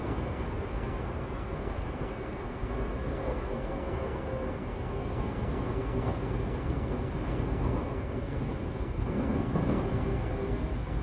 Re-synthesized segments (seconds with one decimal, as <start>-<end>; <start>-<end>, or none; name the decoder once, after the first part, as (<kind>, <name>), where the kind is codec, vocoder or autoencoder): 0.0-11.0 (codec, SNAC)